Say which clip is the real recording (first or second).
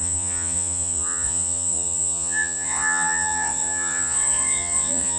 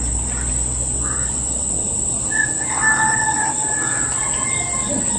second